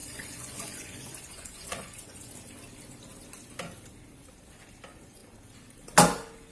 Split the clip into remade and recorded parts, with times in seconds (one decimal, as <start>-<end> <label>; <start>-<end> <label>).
0.0-2.3 remade; 2.3-6.5 recorded